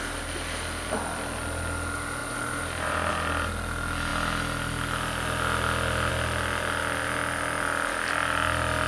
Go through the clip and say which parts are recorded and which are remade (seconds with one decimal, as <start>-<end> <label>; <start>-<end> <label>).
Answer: 0.0-2.2 recorded; 2.2-3.1 remade; 3.1-8.9 recorded